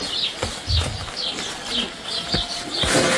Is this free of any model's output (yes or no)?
yes